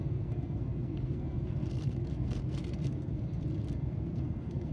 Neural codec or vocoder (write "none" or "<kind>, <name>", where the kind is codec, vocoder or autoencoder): codec, SNAC